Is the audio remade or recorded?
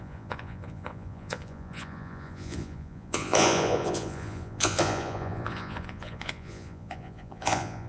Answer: remade